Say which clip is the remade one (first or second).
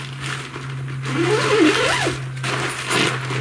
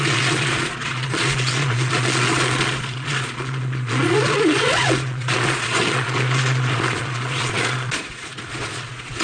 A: second